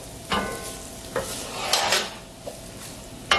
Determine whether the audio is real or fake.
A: fake